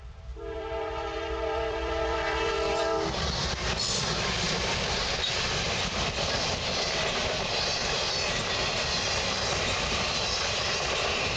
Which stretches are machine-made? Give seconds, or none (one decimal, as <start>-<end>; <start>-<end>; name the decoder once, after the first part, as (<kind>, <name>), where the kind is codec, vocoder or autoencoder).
0.0-7.8 (vocoder, BigVGAN v2); 9.6-11.4